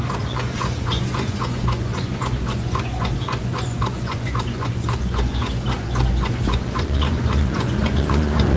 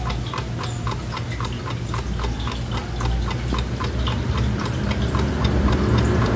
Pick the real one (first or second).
second